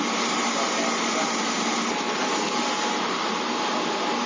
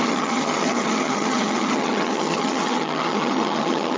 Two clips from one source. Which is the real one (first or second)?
first